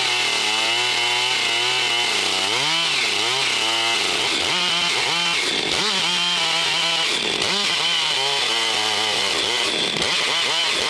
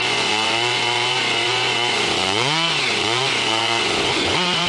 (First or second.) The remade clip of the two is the second